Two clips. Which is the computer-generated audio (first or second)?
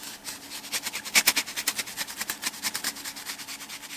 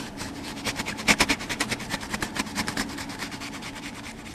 second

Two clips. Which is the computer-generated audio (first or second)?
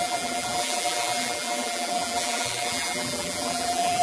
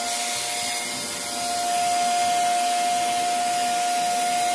first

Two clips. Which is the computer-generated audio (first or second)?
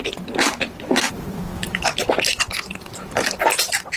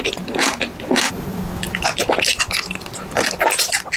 first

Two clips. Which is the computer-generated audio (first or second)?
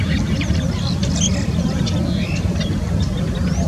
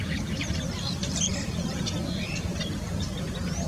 second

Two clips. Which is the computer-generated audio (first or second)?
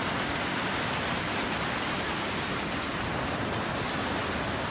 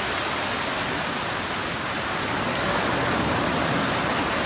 first